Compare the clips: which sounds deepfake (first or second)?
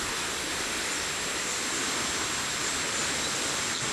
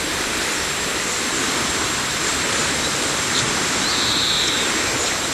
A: second